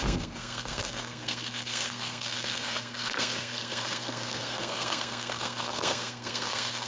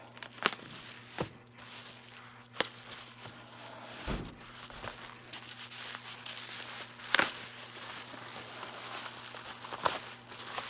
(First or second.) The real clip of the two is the second